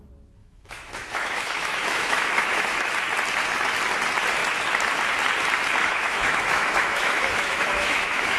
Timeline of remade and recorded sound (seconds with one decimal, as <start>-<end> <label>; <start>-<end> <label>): 0.0-0.4 recorded; 0.4-2.9 remade; 2.9-5.8 recorded; 5.8-8.4 remade